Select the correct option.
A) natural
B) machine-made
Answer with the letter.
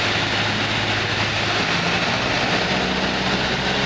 A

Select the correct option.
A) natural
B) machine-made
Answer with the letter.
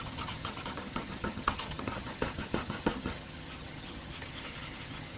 B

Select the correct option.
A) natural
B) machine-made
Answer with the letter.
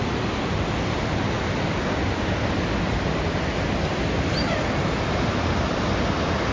A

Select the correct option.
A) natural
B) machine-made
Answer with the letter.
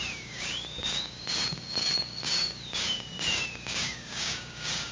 B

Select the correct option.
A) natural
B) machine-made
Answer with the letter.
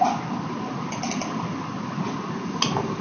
A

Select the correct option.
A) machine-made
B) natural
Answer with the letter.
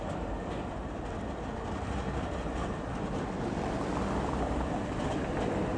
B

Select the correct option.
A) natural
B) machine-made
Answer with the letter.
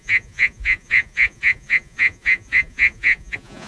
B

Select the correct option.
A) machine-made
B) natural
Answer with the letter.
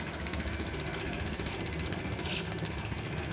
A